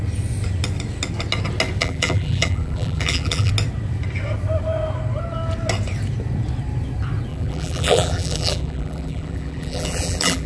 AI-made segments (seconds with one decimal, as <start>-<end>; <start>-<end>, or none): 1.8-3.5; 7.3-10.5